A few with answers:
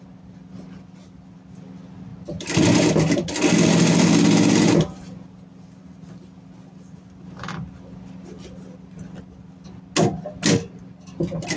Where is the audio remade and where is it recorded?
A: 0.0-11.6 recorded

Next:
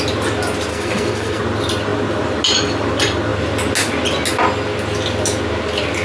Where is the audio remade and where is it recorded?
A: 0.0-0.7 recorded; 0.7-1.4 remade; 1.4-6.0 recorded

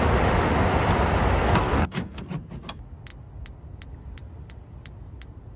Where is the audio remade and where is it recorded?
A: 0.0-1.4 recorded; 1.4-2.2 remade; 2.2-5.6 recorded

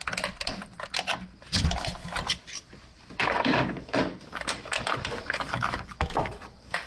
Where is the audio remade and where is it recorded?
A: 0.0-3.2 recorded; 3.2-6.9 remade

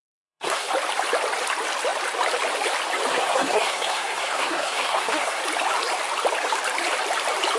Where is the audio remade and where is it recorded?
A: 0.0-0.7 remade; 0.7-3.1 recorded; 3.1-5.4 remade; 5.4-7.6 recorded

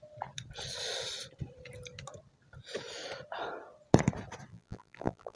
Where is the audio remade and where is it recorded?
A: 0.0-4.5 recorded; 4.5-5.4 remade